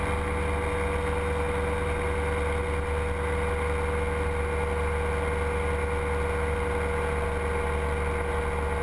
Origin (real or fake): real